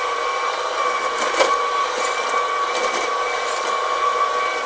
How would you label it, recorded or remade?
remade